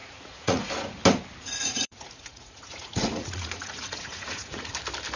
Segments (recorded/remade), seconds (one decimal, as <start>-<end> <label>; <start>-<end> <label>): 0.0-0.6 remade; 0.6-1.6 recorded; 1.6-4.7 remade; 4.7-5.2 recorded